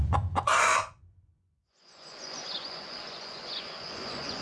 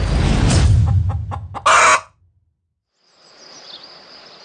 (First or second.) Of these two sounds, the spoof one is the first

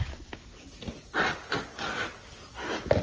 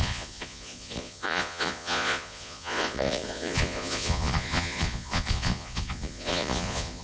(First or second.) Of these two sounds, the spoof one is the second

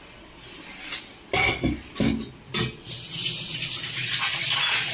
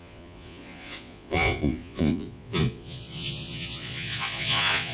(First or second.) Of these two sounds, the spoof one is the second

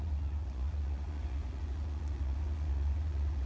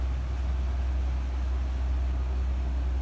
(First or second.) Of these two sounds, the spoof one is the first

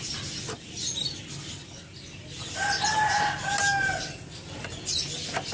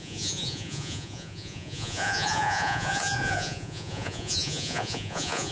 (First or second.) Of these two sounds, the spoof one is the second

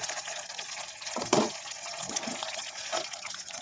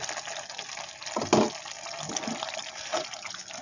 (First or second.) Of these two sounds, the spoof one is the first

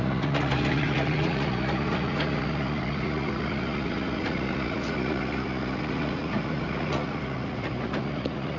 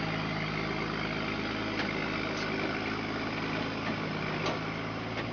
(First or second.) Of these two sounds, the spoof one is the first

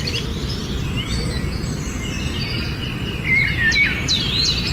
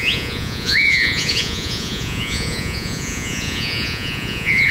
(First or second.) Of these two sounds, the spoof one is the second